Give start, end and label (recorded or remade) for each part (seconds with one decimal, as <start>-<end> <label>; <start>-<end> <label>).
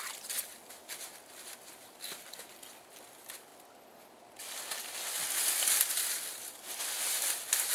0.0-7.7 recorded